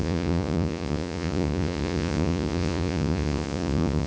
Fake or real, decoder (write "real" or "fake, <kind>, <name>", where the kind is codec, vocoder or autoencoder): fake, vocoder, Vocos